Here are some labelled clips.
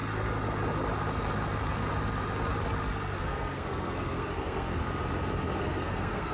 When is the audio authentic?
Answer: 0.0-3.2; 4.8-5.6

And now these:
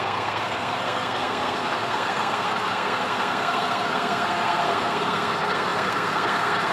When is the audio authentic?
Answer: none

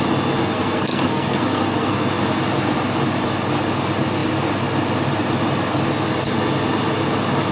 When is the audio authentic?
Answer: 0.0-0.4; 2.0-7.5

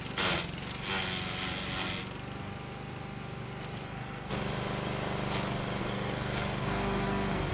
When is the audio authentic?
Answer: 0.0-3.9; 4.4-5.8

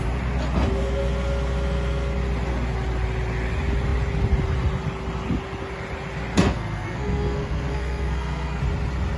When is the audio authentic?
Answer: 0.0-6.4; 8.6-9.2

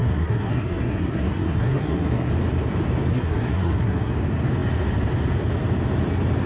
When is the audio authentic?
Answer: 2.3-3.1; 4.1-6.5

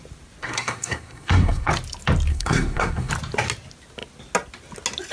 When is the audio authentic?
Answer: 0.0-0.4; 1.7-2.3; 3.1-5.1